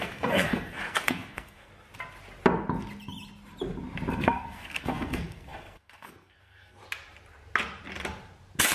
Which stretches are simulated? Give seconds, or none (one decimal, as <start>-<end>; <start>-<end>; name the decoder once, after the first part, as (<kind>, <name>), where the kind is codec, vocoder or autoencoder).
0.0-1.7 (codec, SNAC); 4.1-6.8